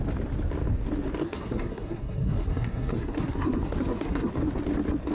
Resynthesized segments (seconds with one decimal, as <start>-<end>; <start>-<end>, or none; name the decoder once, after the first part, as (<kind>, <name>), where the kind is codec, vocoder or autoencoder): 1.2-4.3 (codec, SNAC)